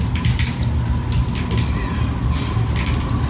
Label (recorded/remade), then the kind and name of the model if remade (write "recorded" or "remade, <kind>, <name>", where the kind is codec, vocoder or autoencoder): recorded